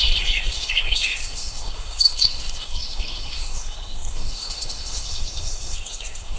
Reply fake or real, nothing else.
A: fake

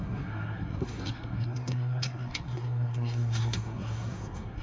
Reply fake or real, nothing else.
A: fake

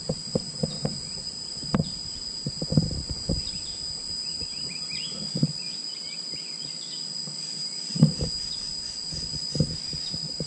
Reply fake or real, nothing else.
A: real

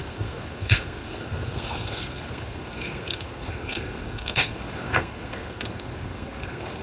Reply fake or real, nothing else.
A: fake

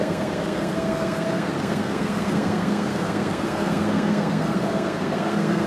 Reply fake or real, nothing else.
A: fake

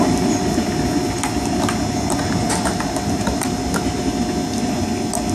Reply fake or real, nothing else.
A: real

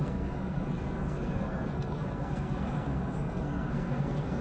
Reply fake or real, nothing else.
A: fake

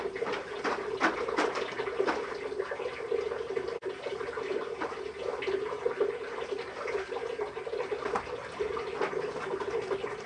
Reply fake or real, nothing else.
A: real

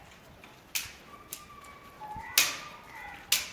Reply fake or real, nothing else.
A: real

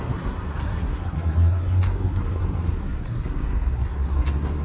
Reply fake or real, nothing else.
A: fake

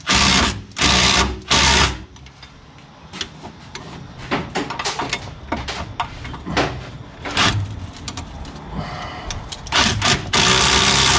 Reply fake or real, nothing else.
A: real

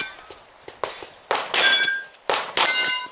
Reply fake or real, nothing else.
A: real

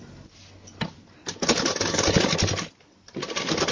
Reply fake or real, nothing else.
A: real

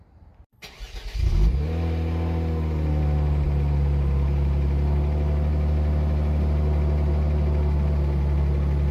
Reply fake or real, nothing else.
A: real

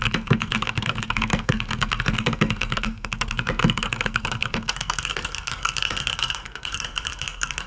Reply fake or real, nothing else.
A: fake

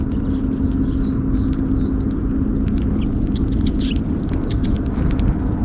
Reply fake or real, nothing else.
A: real